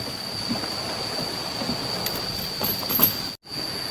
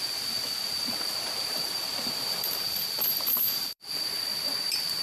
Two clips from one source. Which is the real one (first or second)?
first